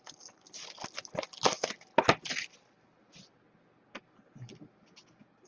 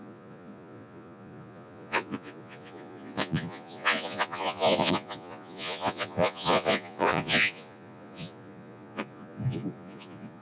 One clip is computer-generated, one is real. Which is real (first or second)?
first